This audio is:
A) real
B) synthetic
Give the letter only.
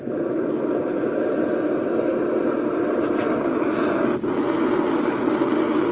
A